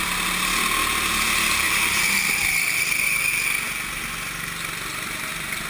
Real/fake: real